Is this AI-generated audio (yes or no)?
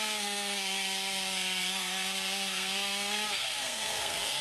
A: yes